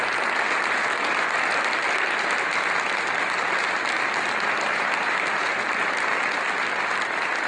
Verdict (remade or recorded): recorded